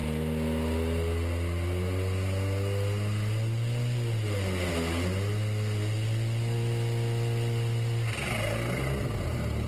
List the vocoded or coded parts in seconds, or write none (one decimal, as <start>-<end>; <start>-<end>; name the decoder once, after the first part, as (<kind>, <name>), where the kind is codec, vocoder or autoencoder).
none